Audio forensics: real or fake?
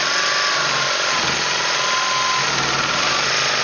real